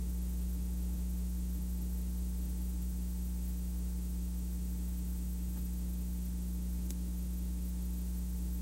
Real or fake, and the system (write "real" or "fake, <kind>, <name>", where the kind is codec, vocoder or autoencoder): fake, autoencoder, DAC-VAE